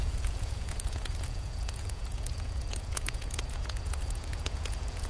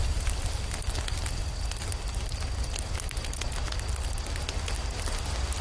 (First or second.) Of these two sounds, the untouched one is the second